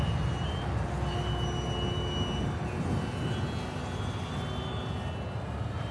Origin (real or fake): real